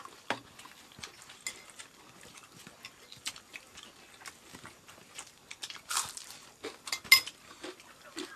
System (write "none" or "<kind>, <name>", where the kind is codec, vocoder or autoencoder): none